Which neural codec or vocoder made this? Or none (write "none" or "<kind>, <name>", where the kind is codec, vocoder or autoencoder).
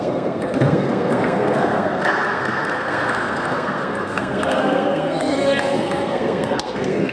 codec, SNAC